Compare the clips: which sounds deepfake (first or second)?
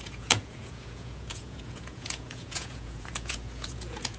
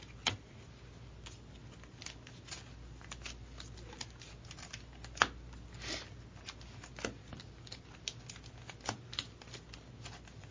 first